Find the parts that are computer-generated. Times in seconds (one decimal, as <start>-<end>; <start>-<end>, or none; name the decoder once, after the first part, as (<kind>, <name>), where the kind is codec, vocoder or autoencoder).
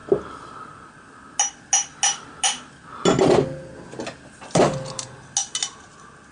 none